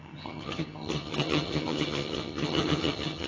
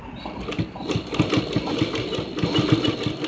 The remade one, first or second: first